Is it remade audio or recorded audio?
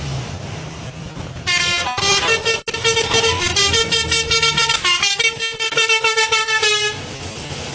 recorded